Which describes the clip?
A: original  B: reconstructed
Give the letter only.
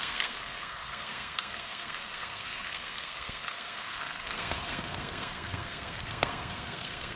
B